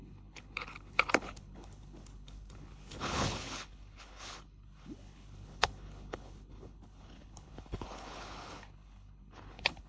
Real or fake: fake